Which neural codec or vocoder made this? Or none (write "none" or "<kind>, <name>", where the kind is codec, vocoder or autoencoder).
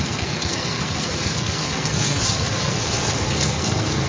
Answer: codec, SNAC